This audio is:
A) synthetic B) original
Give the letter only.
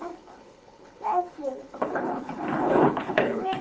A